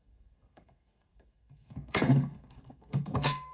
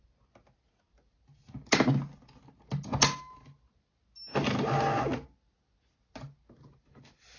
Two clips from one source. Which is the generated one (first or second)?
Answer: first